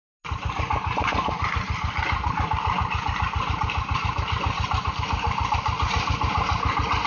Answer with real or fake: real